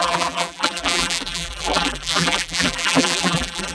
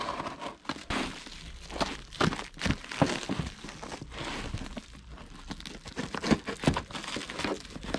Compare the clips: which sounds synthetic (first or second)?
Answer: first